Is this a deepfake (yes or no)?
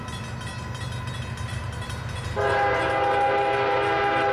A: no